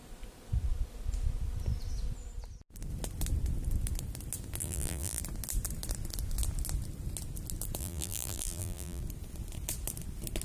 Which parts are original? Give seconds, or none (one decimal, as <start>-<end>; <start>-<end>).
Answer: 0.0-4.6; 5.2-7.8; 9.0-10.4